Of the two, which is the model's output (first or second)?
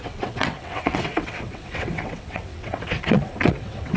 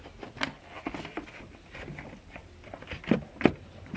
first